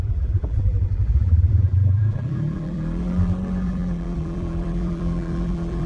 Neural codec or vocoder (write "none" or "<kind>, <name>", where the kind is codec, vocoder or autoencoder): vocoder, BigVGAN v2